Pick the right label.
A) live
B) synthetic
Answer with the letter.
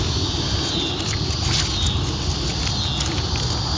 A